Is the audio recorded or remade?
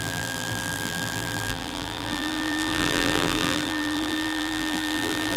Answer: remade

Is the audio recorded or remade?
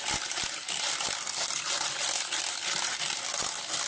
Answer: recorded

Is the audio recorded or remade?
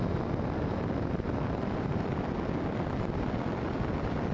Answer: recorded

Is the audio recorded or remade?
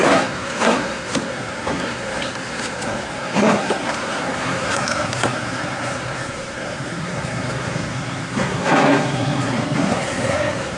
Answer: remade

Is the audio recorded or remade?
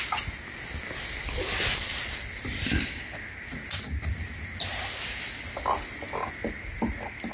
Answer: recorded